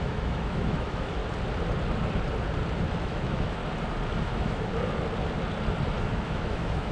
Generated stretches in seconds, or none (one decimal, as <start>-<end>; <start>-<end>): 0.0-1.2; 3.0-3.6; 4.2-4.7; 6.0-6.9